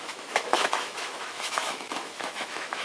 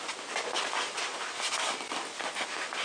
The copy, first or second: first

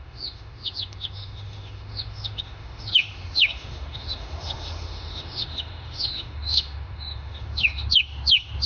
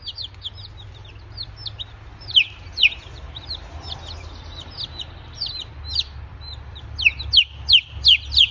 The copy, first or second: first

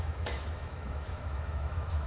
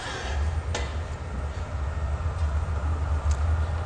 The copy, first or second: first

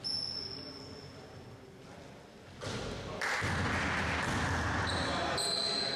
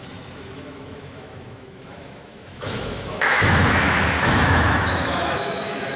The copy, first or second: second